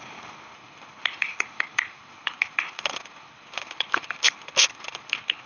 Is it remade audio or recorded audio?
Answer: remade